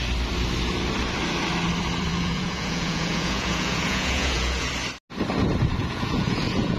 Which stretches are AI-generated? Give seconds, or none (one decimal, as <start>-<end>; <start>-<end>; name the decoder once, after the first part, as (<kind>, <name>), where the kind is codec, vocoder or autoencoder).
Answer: 2.1-4.7 (vocoder, Vocos); 5.8-6.8